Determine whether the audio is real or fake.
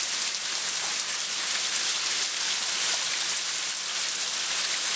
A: real